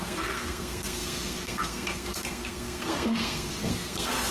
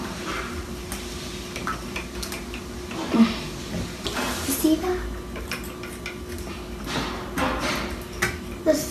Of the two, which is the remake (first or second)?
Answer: first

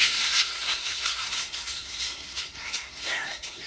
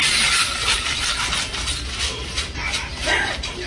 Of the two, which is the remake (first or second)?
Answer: first